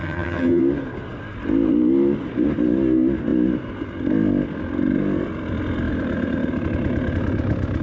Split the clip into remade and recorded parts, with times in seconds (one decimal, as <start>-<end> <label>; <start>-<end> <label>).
0.0-0.6 remade; 0.6-7.8 recorded